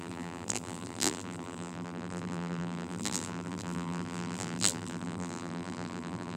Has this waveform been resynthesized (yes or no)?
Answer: yes